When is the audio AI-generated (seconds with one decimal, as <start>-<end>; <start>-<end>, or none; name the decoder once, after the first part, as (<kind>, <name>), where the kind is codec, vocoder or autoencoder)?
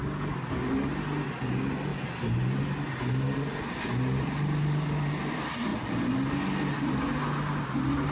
none